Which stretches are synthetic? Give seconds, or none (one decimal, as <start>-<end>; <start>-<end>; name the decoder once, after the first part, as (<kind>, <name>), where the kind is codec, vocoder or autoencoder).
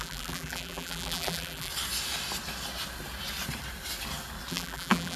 0.0-1.7 (vocoder, BigVGAN v2); 4.5-5.2